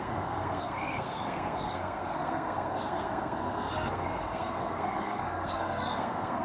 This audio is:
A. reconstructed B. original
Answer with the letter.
A